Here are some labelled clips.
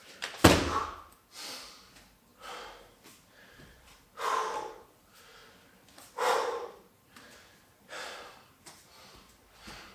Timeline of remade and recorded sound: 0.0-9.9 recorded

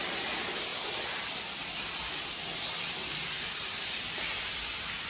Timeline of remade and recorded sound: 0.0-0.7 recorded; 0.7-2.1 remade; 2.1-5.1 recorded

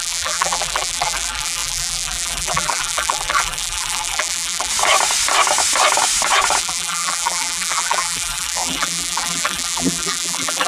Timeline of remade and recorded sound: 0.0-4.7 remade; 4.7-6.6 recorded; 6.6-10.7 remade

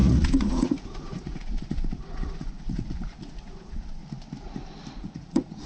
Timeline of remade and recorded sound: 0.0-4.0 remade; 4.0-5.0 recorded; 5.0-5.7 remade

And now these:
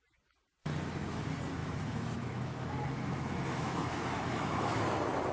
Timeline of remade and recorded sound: 0.0-0.6 recorded; 0.6-1.2 remade; 1.2-1.6 recorded; 1.6-4.8 remade; 4.8-5.3 recorded

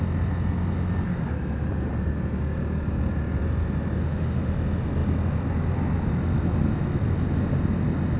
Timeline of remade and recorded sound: 0.0-4.0 recorded; 4.0-4.5 remade; 4.5-8.2 recorded

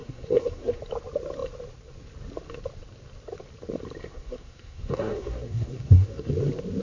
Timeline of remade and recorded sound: 0.0-0.8 remade; 0.8-4.0 recorded; 4.0-6.3 remade; 6.3-6.8 recorded

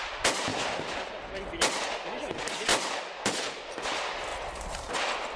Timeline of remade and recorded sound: 0.0-4.3 recorded; 4.3-4.9 remade; 4.9-5.4 recorded